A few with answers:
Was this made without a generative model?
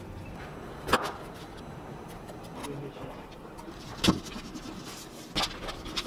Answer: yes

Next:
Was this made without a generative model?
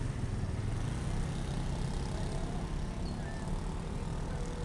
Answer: yes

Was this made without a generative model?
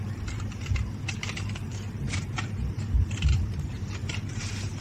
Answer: no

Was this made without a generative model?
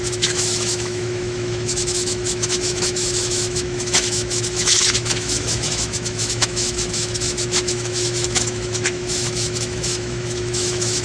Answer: no